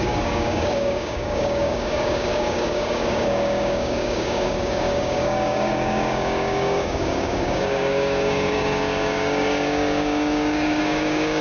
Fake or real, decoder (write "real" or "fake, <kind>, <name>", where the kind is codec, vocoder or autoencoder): fake, codec, DAC